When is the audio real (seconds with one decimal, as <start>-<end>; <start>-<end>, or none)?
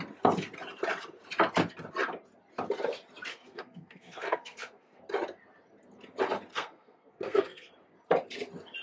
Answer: 0.0-3.3; 5.0-6.5; 7.7-8.8